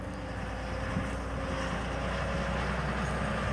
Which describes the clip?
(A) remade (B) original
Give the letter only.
B